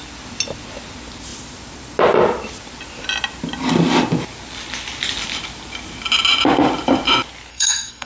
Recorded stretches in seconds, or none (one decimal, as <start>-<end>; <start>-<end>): 0.0-7.5